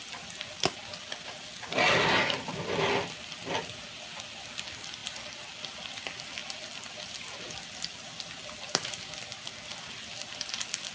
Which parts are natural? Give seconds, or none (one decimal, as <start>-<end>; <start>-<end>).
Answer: 0.0-10.9